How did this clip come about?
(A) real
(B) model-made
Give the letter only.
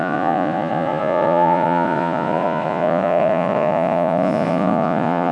B